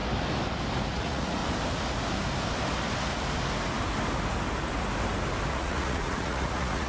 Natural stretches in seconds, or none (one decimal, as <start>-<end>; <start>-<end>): 0.0-0.9; 1.4-5.5